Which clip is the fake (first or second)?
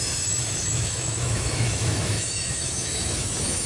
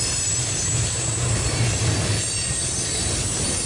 first